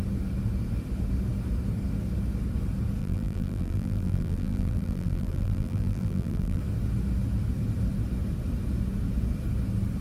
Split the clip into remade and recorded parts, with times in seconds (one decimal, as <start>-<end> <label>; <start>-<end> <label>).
0.0-3.0 recorded; 3.0-6.6 remade; 6.6-10.0 recorded